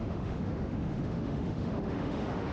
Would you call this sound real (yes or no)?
no